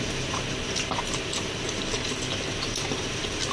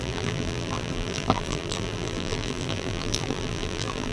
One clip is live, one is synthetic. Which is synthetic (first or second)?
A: second